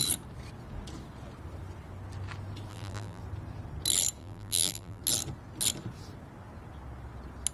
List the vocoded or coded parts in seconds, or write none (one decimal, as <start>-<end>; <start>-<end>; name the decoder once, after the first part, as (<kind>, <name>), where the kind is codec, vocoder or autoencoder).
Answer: 2.7-3.2 (vocoder, BigVGAN v2); 4.2-5.0